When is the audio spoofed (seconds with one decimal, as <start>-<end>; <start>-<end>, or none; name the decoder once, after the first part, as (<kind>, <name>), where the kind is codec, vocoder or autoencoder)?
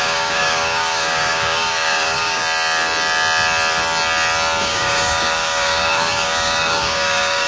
0.0-2.4 (codec, DAC); 4.6-7.5